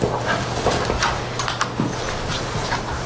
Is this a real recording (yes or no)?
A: yes